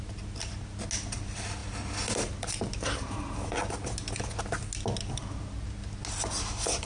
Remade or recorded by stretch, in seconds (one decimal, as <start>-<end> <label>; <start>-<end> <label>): 0.0-6.9 recorded